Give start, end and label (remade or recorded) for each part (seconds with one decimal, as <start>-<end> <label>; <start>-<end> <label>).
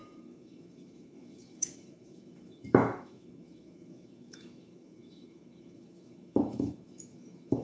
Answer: 0.0-7.6 remade